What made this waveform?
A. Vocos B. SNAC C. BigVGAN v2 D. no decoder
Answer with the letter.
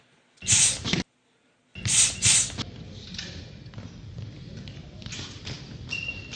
D